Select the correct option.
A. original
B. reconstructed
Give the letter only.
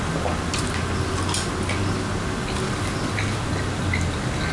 A